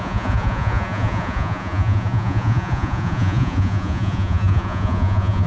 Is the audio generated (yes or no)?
yes